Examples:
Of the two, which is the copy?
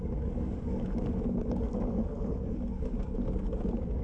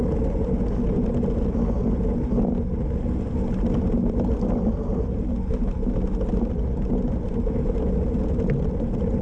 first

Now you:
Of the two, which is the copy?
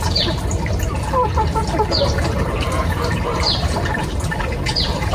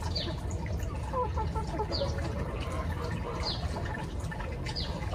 first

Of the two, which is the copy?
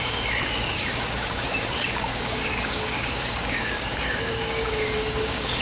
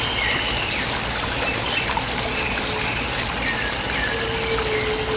first